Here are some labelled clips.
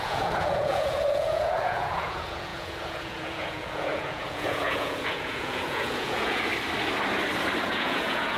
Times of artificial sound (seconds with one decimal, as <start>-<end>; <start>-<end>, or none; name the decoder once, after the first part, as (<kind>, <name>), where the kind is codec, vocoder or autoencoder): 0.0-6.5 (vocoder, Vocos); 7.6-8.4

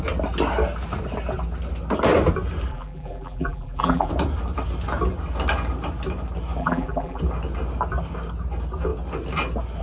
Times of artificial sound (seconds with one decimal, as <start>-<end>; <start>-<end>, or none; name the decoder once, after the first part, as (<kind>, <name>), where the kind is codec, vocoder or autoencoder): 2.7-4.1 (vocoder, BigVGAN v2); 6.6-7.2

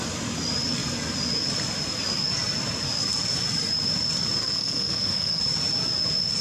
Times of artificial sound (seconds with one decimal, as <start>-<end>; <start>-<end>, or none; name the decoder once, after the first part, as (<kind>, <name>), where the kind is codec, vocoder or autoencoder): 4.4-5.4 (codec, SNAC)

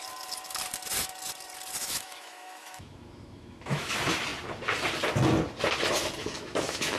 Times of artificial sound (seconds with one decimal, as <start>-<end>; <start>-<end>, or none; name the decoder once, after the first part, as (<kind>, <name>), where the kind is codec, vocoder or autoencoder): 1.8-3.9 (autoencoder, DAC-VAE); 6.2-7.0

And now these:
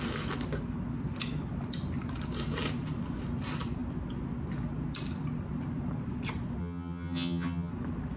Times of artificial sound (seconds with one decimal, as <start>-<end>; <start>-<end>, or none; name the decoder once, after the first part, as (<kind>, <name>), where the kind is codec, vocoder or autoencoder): 6.6-7.7 (vocoder, HiFi-GAN)

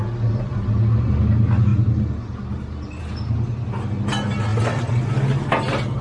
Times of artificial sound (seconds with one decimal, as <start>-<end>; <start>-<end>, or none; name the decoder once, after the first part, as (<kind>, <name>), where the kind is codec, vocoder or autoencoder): 4.5-5.1 (vocoder, BigVGAN v2)

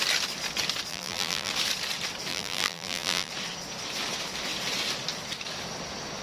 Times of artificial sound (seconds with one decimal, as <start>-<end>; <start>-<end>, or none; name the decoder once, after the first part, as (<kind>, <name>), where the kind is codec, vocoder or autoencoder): 0.9-1.5 (vocoder, BigVGAN v2); 2.3-3.3

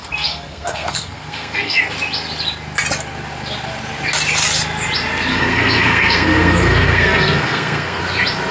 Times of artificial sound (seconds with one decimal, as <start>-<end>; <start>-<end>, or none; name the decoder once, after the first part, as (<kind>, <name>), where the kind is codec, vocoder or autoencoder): 0.0-1.8 (codec, SNAC); 5.3-8.0